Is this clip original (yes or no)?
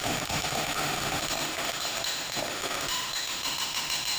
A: no